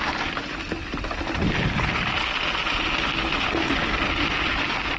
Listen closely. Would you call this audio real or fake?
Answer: real